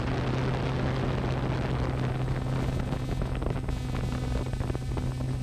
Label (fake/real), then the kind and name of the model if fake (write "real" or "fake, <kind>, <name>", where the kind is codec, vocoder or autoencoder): real